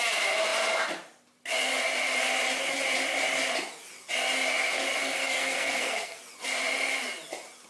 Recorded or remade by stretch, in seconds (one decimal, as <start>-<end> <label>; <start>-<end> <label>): 0.0-5.0 recorded; 5.0-6.2 remade; 6.2-7.7 recorded